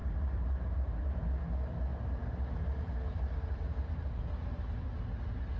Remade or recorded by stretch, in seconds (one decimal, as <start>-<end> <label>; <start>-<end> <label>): 0.0-1.3 remade; 1.3-1.9 recorded; 1.9-4.6 remade; 4.6-5.6 recorded